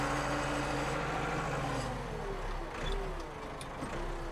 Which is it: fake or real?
real